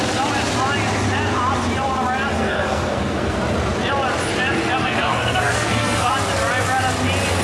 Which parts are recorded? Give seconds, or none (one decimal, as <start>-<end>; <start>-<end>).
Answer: 0.0-2.3; 3.4-4.8; 6.1-7.4